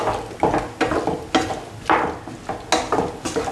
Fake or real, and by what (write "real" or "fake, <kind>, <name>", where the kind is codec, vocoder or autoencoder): real